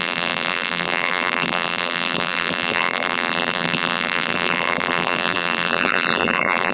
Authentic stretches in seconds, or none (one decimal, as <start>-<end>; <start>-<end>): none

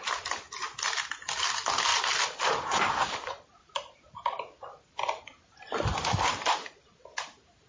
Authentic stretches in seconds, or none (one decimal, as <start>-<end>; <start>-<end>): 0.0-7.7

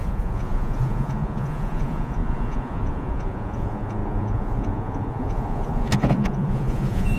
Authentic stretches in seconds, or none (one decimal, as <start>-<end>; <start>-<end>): none